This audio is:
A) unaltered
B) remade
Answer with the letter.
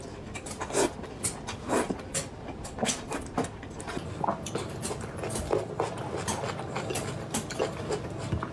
A